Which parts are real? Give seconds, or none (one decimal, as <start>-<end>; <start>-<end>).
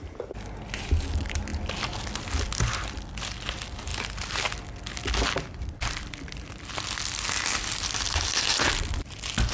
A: 0.0-9.5